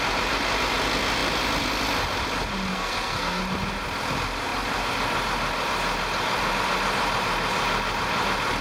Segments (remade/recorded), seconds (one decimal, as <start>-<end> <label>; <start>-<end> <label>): 0.0-2.7 recorded; 2.7-3.4 remade; 3.4-8.6 recorded

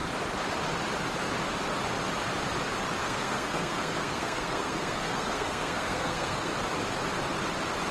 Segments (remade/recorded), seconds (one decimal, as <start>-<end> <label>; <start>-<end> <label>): 0.0-3.0 recorded; 3.0-6.5 remade; 6.5-7.9 recorded

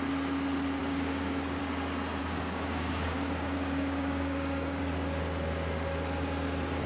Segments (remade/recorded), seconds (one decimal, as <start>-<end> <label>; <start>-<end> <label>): 0.0-0.8 recorded; 0.8-1.6 remade; 1.6-2.2 recorded; 2.2-4.8 remade; 4.8-6.9 recorded

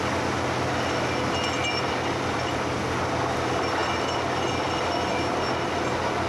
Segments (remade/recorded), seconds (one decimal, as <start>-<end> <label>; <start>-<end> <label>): 0.0-1.6 recorded; 1.6-2.8 remade; 2.8-6.3 recorded

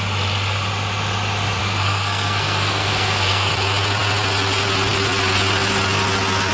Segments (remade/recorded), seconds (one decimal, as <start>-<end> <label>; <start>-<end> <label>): 0.0-1.6 recorded; 1.6-3.5 remade; 3.5-6.5 recorded